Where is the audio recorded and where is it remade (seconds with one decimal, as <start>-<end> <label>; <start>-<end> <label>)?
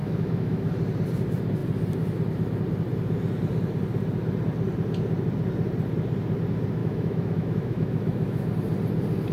0.0-0.7 remade; 0.7-6.8 recorded; 6.8-8.5 remade; 8.5-9.3 recorded